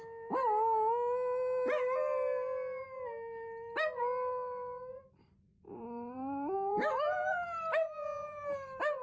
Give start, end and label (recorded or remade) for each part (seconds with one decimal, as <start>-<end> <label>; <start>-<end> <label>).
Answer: 0.0-5.5 recorded; 5.5-6.9 remade; 6.9-9.0 recorded